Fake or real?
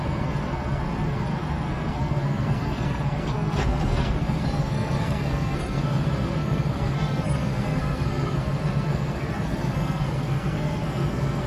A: fake